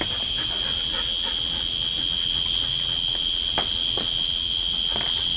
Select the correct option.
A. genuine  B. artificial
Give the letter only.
A